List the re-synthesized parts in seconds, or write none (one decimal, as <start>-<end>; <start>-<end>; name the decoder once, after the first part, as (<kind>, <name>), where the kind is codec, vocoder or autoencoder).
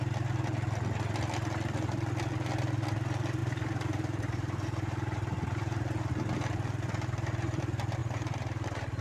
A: 3.4-6.1 (vocoder, BigVGAN v2); 8.0-9.0